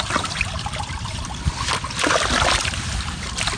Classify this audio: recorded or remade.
remade